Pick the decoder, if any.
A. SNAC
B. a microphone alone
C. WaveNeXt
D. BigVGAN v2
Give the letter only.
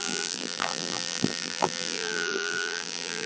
D